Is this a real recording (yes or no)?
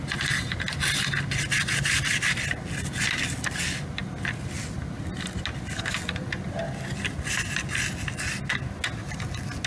yes